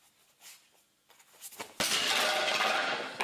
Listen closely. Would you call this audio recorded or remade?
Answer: recorded